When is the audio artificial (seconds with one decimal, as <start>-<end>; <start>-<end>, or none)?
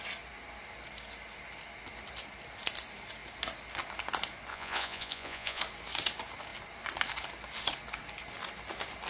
4.5-5.6